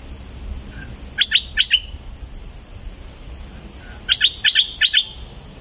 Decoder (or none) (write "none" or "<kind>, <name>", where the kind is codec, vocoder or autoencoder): none